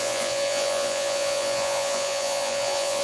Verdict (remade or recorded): remade